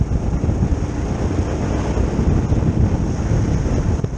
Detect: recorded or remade recorded